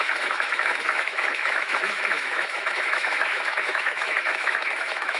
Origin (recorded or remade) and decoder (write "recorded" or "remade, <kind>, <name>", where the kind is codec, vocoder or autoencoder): remade, autoencoder, DAC-VAE